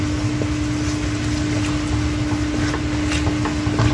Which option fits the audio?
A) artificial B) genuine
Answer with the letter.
B